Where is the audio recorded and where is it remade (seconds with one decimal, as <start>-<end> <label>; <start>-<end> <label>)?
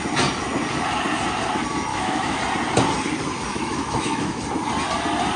0.0-1.9 recorded; 1.9-2.4 remade; 2.4-3.5 recorded; 3.5-4.4 remade; 4.4-5.4 recorded